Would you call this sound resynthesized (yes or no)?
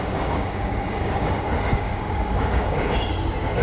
yes